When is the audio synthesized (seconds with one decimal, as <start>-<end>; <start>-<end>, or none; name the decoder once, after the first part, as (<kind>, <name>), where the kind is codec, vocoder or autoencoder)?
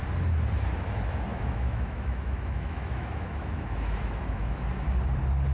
1.3-4.6 (autoencoder, DAC-VAE)